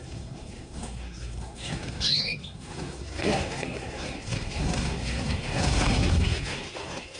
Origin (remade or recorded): remade